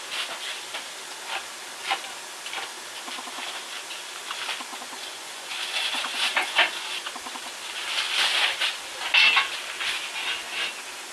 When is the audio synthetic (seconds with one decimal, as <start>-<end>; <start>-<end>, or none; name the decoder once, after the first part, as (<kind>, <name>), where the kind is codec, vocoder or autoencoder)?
4.7-7.1 (vocoder, Vocos)